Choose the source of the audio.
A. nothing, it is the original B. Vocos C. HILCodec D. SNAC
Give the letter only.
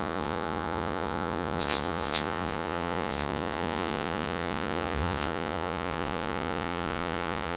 B